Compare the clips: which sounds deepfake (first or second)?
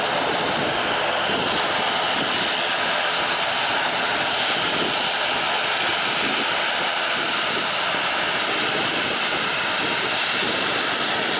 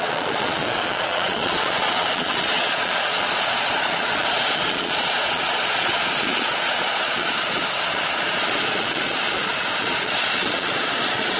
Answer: second